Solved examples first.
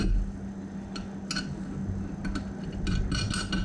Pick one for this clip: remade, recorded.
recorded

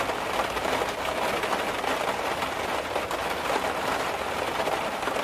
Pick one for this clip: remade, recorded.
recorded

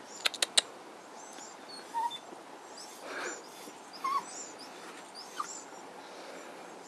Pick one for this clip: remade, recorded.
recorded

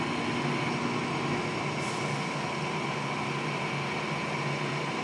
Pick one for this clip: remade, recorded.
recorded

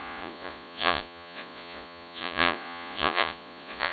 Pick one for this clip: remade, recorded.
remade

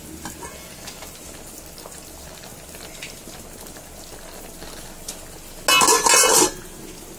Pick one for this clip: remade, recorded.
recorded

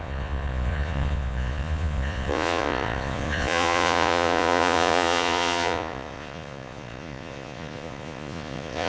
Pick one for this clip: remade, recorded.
remade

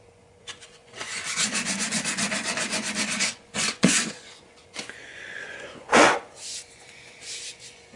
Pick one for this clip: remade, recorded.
remade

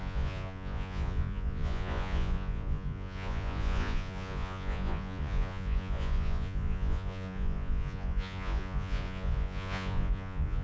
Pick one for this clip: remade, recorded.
remade